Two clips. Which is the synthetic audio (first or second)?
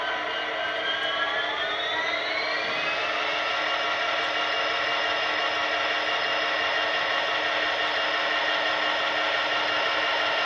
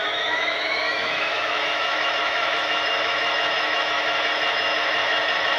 second